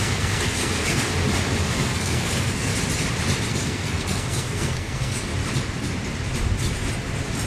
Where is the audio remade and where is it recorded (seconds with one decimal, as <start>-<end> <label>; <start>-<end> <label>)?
0.0-1.1 remade; 1.1-1.6 recorded; 1.6-2.7 remade; 2.7-3.5 recorded; 3.5-5.3 remade; 5.3-7.5 recorded